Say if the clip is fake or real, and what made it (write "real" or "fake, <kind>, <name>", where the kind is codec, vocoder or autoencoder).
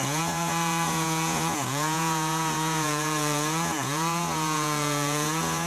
fake, vocoder, Vocos